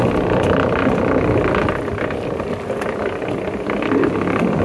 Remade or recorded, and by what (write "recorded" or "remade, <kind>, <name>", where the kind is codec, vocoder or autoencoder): recorded